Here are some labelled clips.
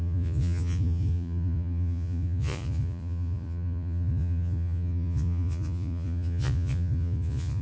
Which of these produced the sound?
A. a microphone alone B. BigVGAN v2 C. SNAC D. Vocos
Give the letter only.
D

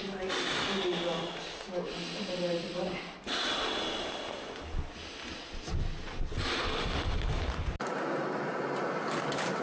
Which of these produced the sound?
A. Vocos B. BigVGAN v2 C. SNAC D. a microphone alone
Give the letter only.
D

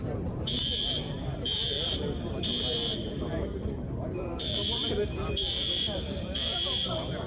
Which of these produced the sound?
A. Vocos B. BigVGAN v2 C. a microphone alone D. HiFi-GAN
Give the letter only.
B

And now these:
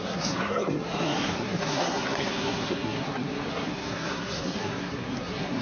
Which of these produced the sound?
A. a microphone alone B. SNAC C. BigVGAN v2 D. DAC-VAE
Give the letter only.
B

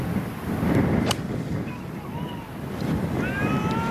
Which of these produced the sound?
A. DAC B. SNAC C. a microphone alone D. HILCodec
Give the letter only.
C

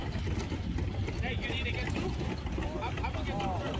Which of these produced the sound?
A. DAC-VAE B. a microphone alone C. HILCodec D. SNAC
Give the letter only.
B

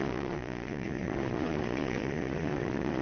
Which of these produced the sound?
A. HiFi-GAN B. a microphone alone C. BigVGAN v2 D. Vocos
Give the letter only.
D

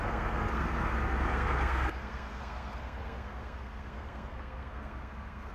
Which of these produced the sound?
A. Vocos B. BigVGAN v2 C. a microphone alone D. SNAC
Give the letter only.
D